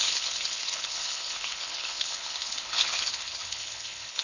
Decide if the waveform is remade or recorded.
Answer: remade